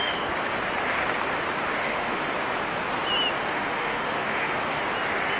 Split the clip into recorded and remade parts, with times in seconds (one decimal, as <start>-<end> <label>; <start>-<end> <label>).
0.0-1.8 recorded; 1.8-2.3 remade; 2.3-3.4 recorded; 3.4-4.8 remade; 4.8-5.4 recorded